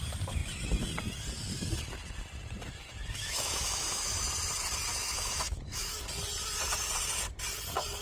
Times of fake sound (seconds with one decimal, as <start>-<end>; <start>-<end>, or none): 3.1-4.3; 4.9-6.0